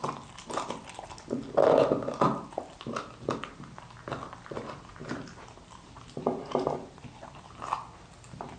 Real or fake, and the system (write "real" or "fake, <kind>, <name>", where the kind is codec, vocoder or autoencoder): real